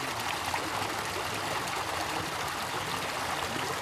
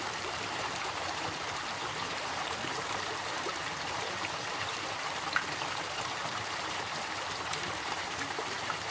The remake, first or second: second